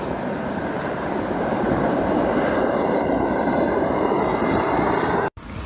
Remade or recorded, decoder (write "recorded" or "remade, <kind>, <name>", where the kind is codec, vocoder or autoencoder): remade, vocoder, BigVGAN v2